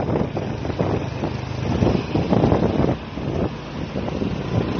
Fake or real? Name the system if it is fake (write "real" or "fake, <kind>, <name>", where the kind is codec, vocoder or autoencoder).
real